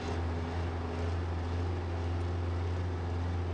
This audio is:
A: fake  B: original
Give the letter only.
B